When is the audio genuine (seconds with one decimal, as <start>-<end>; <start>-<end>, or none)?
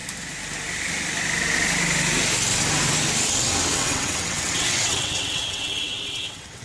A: 0.0-3.7